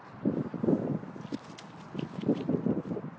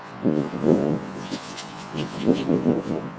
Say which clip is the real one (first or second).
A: first